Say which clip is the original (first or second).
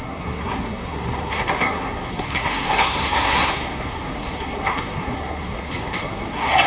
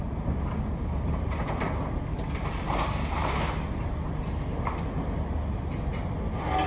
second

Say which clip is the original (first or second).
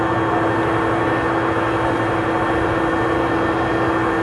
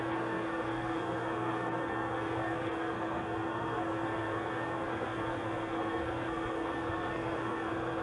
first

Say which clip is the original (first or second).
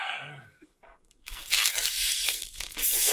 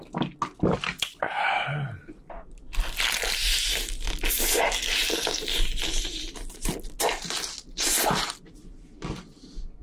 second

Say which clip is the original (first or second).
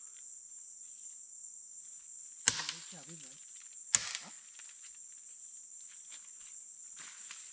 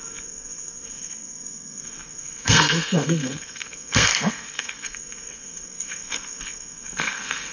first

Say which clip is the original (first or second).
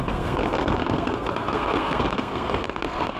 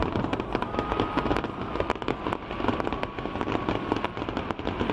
second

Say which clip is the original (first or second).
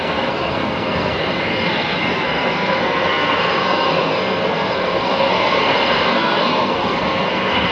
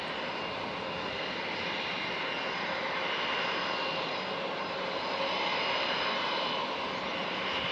second